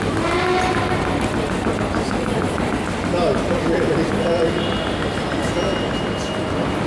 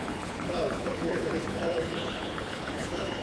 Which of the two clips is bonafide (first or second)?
first